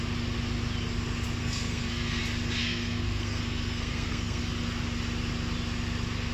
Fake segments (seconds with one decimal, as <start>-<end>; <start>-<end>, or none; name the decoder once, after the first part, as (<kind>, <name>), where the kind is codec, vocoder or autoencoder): 1.4-2.2 (codec, SNAC); 2.6-4.4